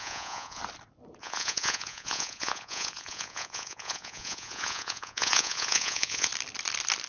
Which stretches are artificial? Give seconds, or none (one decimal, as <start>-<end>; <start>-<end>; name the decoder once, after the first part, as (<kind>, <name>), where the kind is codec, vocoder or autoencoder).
0.0-0.6 (vocoder, Vocos); 1.2-6.3